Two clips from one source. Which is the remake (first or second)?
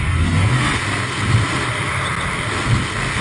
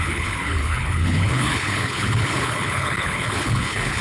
second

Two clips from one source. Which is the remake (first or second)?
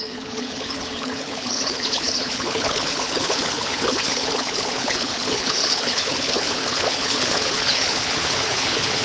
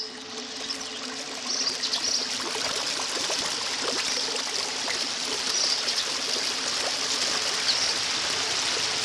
first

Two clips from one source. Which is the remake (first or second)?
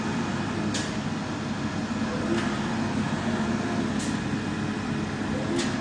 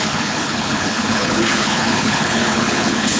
second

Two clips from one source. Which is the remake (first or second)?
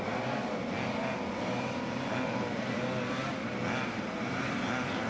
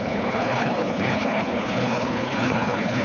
second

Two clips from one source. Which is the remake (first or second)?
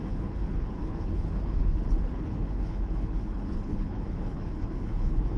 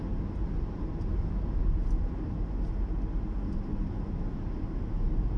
first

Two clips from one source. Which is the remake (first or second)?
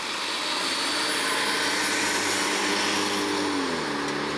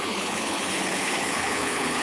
second